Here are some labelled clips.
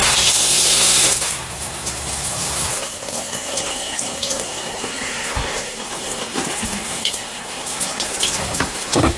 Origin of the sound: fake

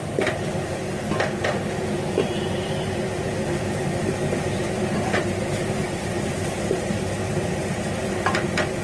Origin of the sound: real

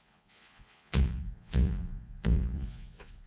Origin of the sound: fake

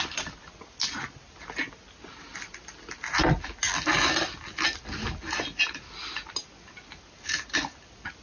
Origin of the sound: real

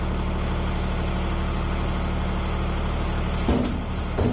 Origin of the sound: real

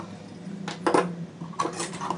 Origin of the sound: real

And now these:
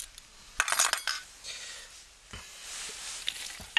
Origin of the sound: real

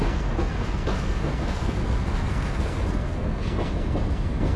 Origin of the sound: fake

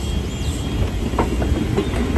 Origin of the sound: real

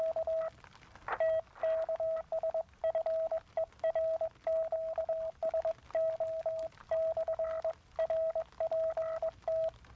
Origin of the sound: real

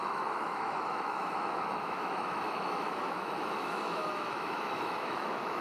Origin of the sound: fake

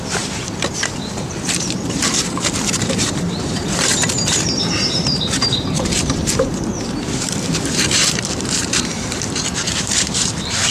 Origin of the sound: fake